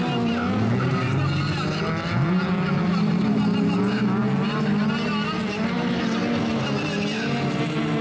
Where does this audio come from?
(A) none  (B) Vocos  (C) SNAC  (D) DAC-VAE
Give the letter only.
A